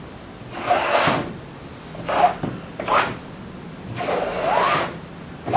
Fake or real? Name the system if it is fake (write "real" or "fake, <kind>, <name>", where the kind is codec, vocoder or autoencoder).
real